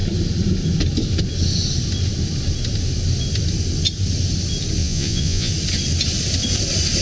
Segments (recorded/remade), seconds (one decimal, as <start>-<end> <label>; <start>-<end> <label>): 0.0-4.8 recorded; 4.8-5.5 remade; 5.5-7.0 recorded